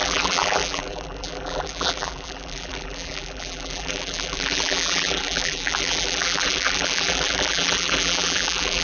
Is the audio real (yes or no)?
no